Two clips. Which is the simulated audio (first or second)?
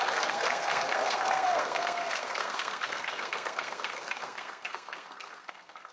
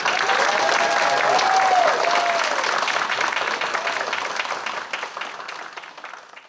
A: first